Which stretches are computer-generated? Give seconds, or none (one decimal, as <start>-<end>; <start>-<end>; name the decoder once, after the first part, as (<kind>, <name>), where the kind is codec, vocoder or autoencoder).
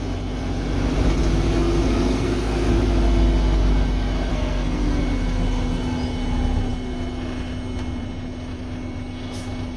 1.6-2.7 (codec, SNAC); 4.3-5.0